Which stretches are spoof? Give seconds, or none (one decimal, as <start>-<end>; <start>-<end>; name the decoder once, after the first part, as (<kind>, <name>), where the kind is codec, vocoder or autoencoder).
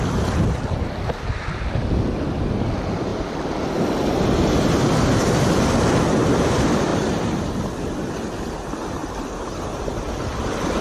3.1-3.6 (vocoder, BigVGAN v2); 6.9-7.7